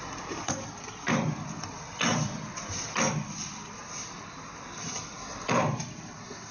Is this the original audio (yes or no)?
no